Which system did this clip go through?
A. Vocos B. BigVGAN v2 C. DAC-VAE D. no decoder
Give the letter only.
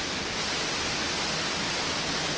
D